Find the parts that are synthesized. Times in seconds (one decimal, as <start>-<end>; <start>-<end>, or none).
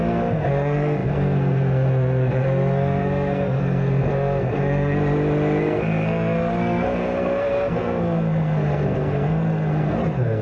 0.0-5.0; 5.6-10.4